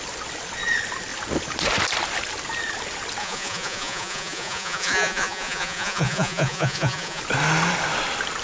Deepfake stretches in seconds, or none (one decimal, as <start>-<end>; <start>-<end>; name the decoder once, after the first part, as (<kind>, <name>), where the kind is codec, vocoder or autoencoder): 3.2-7.2 (vocoder, Vocos)